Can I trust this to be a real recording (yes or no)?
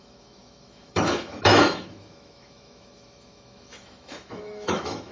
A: no